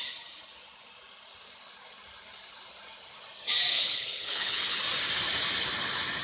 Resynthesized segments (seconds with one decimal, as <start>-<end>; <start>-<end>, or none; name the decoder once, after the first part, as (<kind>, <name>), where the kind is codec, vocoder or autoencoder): 3.7-4.8 (codec, HILCodec)